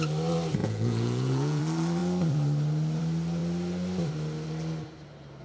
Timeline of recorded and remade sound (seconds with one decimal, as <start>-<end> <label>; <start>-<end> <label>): 0.0-0.6 recorded; 0.6-1.6 remade; 1.6-5.4 recorded